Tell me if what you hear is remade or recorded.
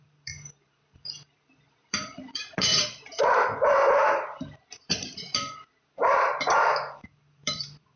remade